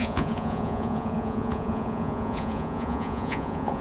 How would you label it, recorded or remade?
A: remade